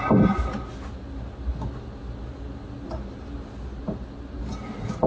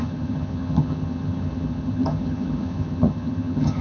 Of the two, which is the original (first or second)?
first